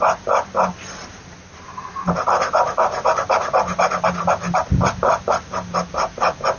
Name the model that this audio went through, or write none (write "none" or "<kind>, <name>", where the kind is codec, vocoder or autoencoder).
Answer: none